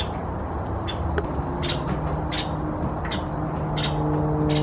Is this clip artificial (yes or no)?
no